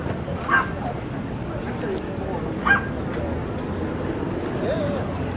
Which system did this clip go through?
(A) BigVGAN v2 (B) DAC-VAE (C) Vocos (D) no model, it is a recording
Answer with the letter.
D